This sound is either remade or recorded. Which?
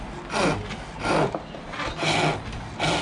recorded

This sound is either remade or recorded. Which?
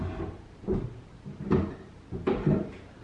recorded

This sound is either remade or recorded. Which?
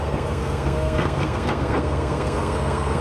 remade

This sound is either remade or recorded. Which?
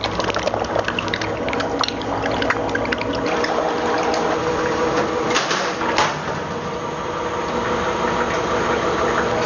recorded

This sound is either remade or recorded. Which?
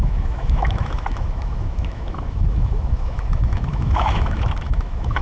remade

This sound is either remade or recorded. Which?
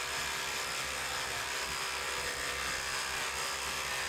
recorded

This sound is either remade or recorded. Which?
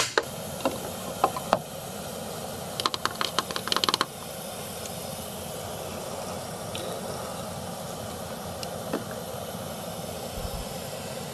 recorded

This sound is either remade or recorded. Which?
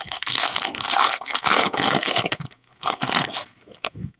remade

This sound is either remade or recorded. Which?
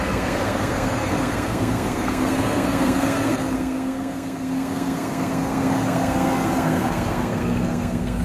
remade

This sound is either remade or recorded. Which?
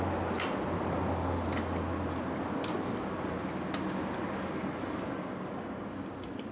recorded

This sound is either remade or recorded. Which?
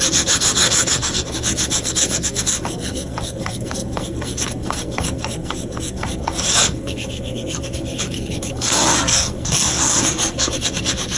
remade